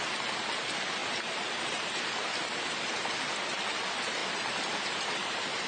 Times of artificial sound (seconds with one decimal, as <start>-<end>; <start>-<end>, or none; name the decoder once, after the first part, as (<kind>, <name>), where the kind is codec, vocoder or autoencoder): 1.0-2.0 (vocoder, BigVGAN v2); 4.2-5.7